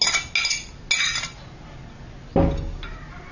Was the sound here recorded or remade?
recorded